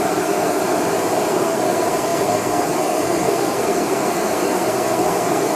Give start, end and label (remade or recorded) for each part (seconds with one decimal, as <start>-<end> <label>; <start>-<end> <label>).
0.0-0.6 remade; 0.6-1.3 recorded; 1.3-5.6 remade